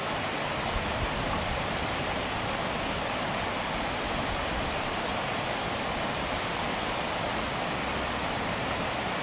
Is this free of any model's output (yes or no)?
yes